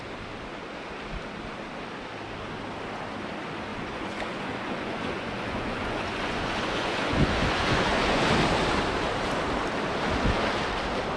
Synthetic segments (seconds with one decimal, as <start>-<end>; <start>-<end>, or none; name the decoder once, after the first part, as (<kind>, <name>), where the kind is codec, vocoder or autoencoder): 3.7-8.3 (vocoder, Vocos)